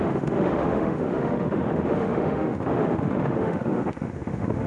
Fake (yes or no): yes